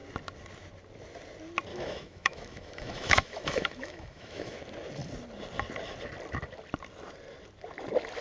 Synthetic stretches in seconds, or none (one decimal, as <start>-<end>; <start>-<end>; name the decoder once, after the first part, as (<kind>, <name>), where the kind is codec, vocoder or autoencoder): 1.7-4.6 (autoencoder, DAC-VAE)